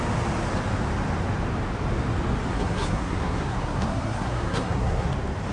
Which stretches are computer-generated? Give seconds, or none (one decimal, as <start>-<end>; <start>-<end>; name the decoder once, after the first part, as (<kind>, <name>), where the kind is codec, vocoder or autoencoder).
2.5-5.1 (codec, SNAC)